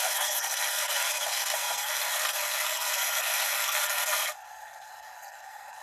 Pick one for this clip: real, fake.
fake